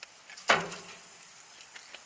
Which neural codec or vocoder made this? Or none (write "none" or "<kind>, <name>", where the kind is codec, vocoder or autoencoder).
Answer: none